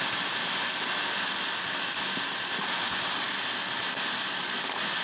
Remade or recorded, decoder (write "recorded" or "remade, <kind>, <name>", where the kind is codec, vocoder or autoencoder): recorded